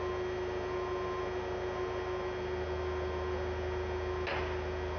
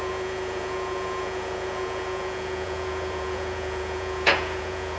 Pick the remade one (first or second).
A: second